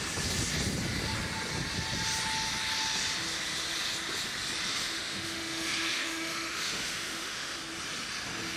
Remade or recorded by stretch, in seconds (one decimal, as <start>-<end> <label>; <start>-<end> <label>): 0.0-4.7 recorded; 4.7-7.6 remade; 7.6-8.6 recorded